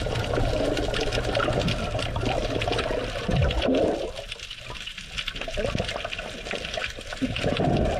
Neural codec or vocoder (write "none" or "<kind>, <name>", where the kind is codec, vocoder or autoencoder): none